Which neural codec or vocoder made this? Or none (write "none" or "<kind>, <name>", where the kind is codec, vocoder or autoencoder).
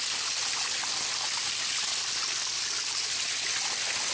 none